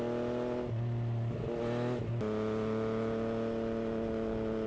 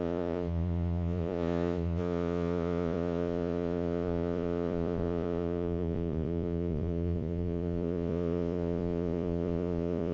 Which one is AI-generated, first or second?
second